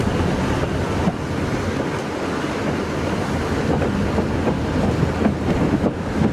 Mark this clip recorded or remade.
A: recorded